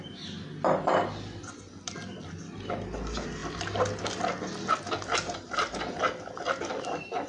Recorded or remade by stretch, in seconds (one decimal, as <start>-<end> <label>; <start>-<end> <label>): 0.0-7.3 recorded